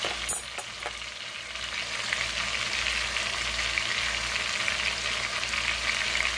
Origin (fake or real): real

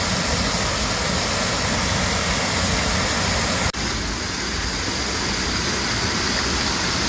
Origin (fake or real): real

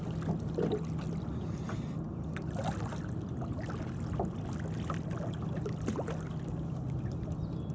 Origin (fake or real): real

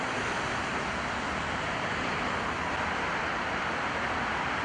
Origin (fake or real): real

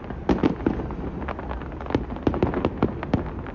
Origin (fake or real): real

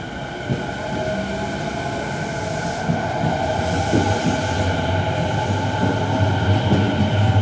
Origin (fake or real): real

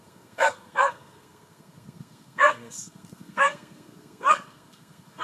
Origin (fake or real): fake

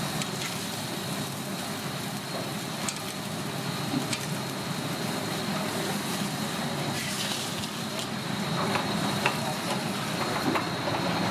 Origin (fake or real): real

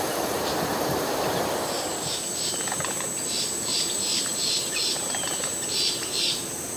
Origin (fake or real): fake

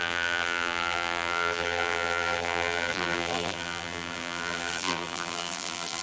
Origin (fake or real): fake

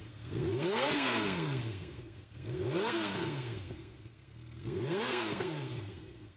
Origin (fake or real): fake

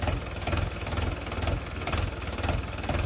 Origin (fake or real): real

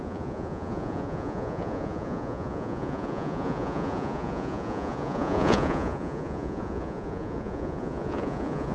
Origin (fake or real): fake